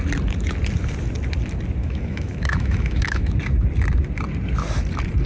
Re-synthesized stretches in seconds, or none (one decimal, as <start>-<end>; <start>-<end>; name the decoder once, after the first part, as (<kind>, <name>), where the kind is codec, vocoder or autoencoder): 1.8-3.4 (autoencoder, DAC-VAE)